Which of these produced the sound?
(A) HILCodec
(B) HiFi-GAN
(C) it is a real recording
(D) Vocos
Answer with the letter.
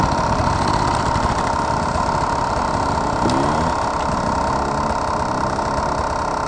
C